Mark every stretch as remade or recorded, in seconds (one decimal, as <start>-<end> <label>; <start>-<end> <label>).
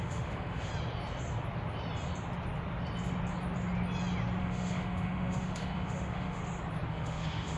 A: 0.0-0.7 remade; 0.7-4.4 recorded; 4.4-6.4 remade; 6.4-6.9 recorded; 6.9-7.6 remade